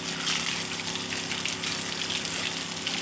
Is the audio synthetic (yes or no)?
no